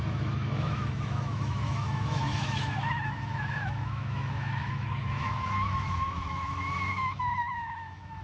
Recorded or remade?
remade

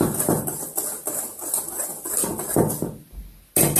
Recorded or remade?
recorded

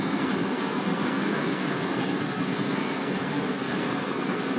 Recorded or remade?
remade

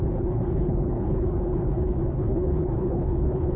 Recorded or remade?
remade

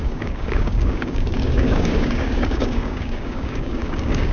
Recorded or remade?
remade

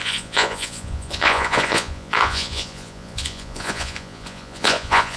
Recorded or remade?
remade